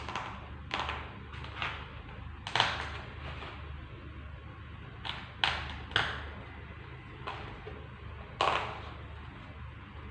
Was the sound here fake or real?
real